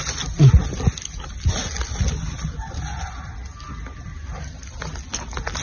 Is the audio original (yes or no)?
yes